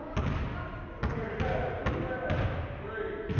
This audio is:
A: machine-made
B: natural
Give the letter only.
B